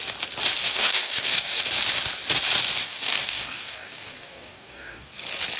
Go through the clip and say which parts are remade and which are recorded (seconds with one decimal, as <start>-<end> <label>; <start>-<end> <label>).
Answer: 0.0-0.6 recorded; 0.6-1.6 remade; 1.6-2.8 recorded; 2.8-5.1 remade; 5.1-5.6 recorded